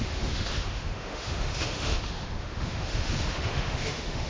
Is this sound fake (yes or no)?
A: yes